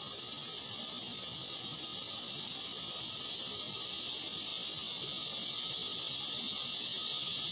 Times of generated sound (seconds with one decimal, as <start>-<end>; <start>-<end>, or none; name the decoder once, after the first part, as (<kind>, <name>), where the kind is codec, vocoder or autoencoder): none